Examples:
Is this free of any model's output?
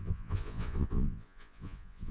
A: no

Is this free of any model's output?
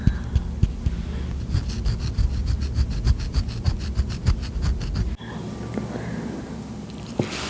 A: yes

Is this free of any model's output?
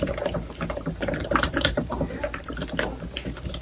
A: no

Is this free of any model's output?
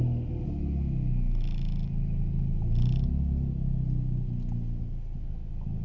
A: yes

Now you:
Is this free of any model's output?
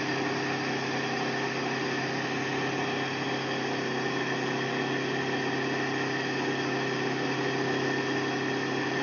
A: yes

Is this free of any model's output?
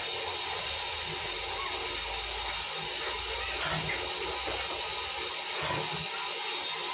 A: yes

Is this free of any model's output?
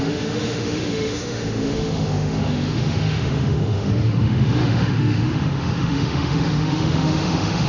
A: no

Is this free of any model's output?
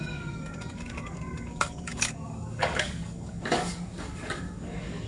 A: no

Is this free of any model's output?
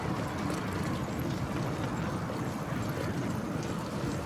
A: yes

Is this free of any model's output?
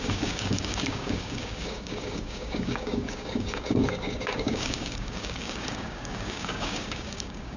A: no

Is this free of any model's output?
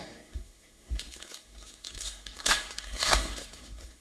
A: no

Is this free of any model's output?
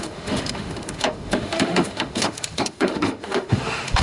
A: no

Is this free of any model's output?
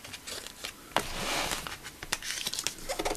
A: yes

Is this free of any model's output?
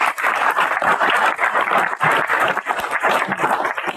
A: no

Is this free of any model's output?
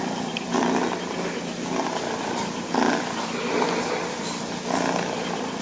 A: yes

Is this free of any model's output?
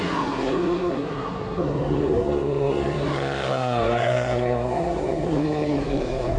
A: no